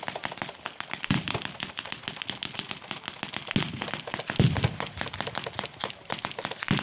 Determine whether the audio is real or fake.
real